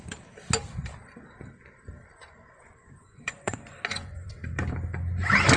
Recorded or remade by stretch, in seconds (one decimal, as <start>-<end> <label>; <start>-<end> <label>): 0.0-2.1 recorded; 2.1-4.3 remade; 4.3-5.6 recorded